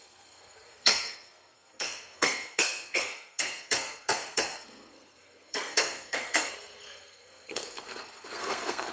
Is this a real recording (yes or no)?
no